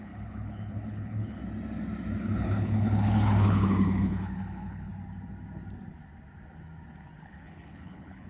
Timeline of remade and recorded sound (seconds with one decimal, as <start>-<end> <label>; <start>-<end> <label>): 0.0-1.4 remade; 1.4-2.2 recorded; 2.2-4.9 remade; 4.9-7.2 recorded; 7.2-8.3 remade

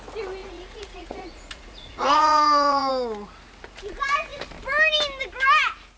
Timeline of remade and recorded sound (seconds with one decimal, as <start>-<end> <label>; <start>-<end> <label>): 0.0-0.4 recorded; 0.4-2.9 remade; 2.9-6.0 recorded

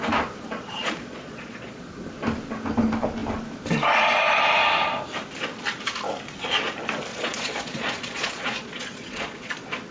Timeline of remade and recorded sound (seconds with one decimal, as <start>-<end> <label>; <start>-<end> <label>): 0.0-0.8 recorded; 0.8-1.8 remade; 1.8-7.1 recorded; 7.1-9.5 remade; 9.5-9.9 recorded

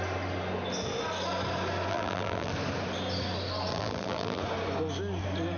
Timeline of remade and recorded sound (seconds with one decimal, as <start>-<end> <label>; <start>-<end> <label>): 0.0-1.9 recorded; 1.9-2.5 remade; 2.5-3.7 recorded; 3.7-4.4 remade; 4.4-5.6 recorded